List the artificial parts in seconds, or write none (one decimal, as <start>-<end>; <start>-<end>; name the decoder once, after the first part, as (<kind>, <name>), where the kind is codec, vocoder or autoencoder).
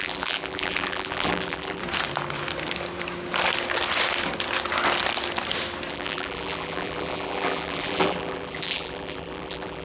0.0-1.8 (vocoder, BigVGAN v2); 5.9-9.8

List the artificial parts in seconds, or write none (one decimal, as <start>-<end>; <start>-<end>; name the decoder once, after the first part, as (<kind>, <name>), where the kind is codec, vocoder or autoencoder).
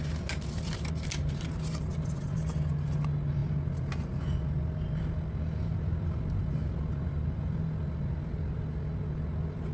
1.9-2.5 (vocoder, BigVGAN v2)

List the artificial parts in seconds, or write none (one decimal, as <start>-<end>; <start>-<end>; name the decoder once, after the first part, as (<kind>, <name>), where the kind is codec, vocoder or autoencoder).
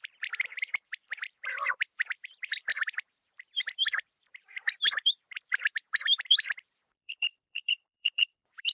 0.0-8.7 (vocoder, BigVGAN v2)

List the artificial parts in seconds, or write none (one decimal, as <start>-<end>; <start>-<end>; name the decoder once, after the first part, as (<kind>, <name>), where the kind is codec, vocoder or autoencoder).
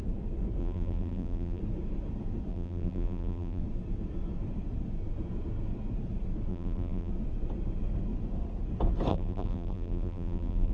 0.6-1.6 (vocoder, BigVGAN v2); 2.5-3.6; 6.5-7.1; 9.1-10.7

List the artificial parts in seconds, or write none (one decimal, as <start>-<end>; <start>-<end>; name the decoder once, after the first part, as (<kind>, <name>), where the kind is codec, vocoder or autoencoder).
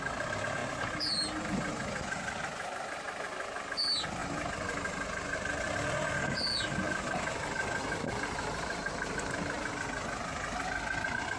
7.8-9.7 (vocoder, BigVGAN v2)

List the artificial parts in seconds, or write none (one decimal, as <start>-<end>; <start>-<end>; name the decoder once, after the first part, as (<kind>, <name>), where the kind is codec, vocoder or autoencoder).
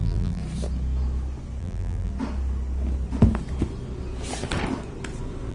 0.0-0.4 (vocoder, BigVGAN v2); 1.6-2.1